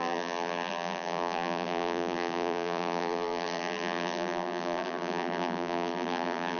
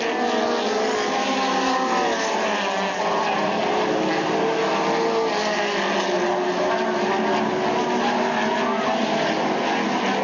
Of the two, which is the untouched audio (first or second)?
second